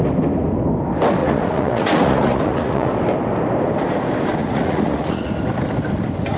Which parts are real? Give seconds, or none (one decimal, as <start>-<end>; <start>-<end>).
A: 0.0-1.2; 2.9-4.4; 5.3-6.4